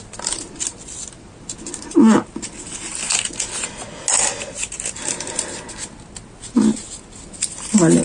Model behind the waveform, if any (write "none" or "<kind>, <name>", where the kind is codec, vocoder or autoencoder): none